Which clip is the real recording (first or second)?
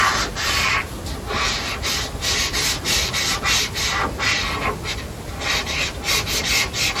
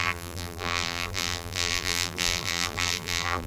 first